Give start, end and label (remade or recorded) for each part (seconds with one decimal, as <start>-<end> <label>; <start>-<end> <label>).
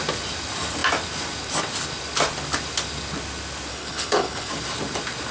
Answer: 0.0-3.7 recorded; 3.7-4.5 remade; 4.5-5.3 recorded